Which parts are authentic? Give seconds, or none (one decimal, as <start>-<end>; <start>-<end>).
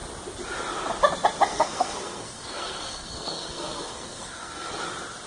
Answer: 0.0-1.5; 4.7-5.3